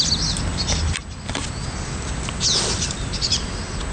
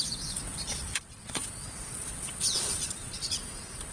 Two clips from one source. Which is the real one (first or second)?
first